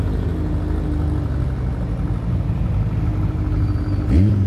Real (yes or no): yes